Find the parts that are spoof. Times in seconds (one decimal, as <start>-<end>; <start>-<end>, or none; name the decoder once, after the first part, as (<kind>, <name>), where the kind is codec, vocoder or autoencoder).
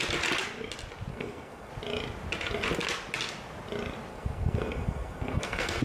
1.1-1.7 (codec, SNAC); 4.1-5.8